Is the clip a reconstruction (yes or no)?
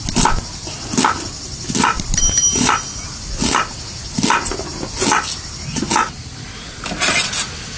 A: no